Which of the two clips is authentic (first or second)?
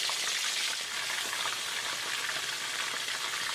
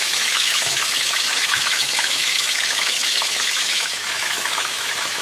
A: first